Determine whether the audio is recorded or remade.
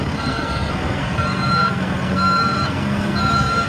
remade